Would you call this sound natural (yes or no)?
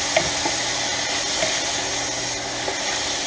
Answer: yes